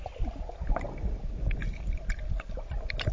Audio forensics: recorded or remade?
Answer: recorded